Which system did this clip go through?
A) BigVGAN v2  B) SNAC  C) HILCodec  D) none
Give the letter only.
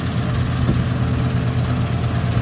D